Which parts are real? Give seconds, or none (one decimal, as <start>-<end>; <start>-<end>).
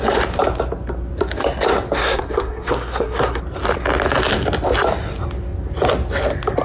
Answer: 0.0-2.0; 3.4-6.6